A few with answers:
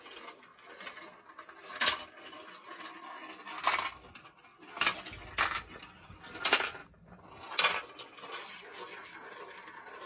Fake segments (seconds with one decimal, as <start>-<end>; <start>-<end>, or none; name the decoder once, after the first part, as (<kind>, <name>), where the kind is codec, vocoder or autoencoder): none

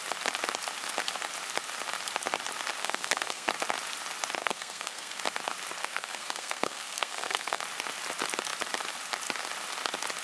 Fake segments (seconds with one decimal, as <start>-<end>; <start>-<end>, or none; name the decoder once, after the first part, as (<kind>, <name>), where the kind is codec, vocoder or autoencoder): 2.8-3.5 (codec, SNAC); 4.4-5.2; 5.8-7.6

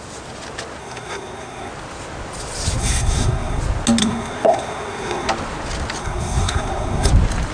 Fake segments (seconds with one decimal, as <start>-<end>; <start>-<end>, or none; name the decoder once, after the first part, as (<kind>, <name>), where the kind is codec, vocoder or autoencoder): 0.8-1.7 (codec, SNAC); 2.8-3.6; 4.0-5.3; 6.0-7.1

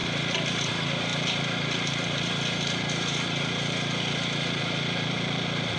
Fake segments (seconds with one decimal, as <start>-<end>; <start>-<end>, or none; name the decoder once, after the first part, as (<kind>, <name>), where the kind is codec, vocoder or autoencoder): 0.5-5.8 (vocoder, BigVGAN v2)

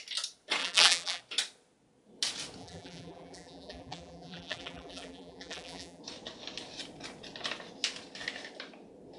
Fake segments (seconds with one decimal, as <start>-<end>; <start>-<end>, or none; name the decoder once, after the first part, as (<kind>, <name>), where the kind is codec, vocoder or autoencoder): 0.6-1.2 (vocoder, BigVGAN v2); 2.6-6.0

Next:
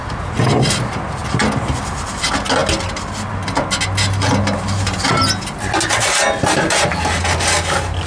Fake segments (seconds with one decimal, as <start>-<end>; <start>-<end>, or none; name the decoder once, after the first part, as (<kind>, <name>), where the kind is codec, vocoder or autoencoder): none

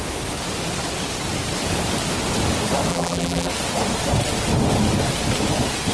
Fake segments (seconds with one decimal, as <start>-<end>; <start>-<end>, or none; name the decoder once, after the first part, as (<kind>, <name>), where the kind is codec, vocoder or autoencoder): 2.9-3.5 (vocoder, BigVGAN v2)